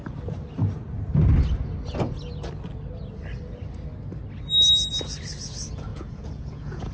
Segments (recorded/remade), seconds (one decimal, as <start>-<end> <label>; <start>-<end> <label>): 0.0-5.9 recorded; 5.9-6.9 remade